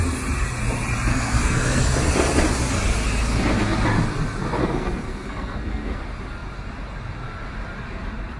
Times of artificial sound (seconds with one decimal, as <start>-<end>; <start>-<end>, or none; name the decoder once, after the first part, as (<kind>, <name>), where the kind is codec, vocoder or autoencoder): 1.1-1.8 (codec, SNAC); 4.6-6.0